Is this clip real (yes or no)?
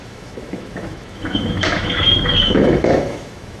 no